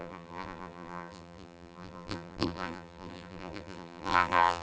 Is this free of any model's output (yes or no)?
no